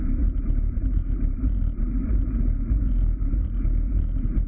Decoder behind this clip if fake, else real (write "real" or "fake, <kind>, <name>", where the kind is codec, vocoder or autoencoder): fake, vocoder, BigVGAN v2